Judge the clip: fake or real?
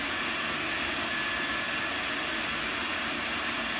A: real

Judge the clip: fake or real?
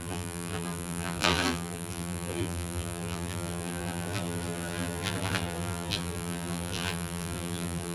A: fake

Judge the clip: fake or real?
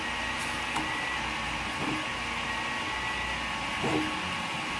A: real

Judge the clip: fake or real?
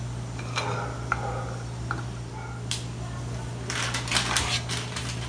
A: real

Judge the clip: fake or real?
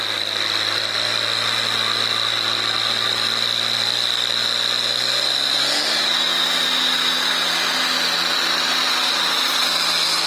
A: real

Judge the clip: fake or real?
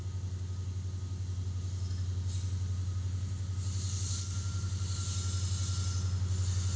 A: real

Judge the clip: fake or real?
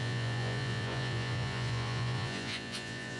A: fake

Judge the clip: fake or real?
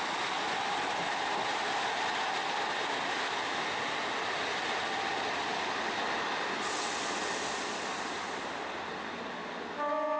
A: real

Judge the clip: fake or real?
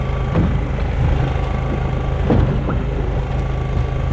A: real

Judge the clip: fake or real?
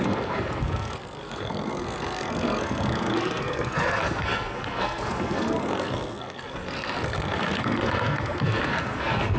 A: fake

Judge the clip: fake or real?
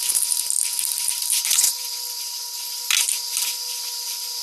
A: real